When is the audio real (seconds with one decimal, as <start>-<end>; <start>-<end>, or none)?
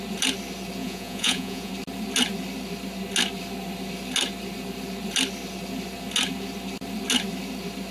0.0-0.8; 1.7-7.9